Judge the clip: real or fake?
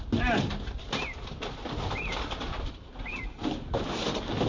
real